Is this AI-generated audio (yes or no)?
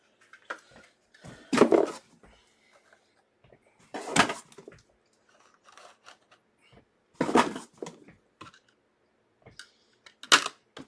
no